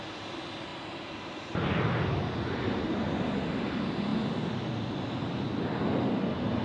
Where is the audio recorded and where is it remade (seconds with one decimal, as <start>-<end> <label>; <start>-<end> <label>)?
0.0-6.6 recorded